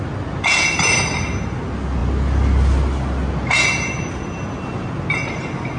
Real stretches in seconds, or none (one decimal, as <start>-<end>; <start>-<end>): 0.0-5.8

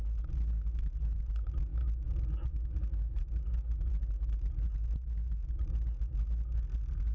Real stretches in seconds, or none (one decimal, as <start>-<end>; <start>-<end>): 0.0-7.1

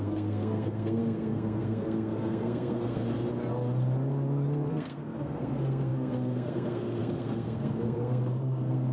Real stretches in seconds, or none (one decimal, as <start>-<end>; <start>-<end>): 3.0-4.7